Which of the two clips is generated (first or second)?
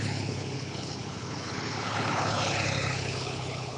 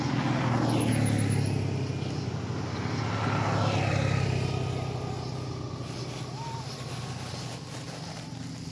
first